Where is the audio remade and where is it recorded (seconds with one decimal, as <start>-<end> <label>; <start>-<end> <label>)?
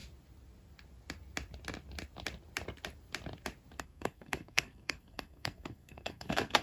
0.0-3.8 recorded; 3.8-6.6 remade